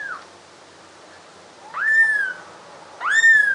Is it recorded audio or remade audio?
recorded